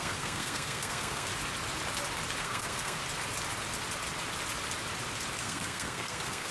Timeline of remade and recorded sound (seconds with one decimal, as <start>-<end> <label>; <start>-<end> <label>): 0.0-1.3 remade; 1.3-2.4 recorded; 2.4-3.0 remade; 3.0-5.4 recorded; 5.4-6.5 remade